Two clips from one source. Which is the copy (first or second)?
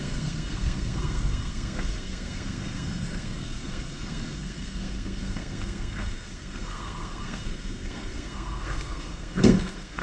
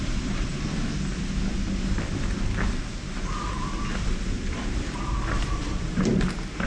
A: first